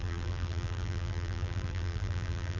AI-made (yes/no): yes